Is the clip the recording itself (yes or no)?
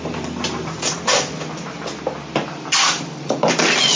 yes